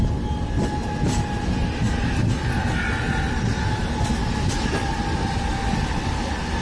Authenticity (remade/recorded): recorded